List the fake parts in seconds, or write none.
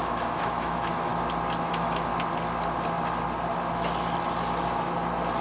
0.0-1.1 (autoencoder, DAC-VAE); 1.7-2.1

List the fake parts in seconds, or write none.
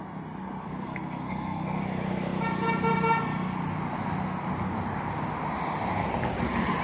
0.7-1.8 (codec, SNAC)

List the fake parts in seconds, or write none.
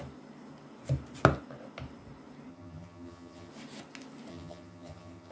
2.5-3.5 (vocoder, HiFi-GAN); 4.3-5.3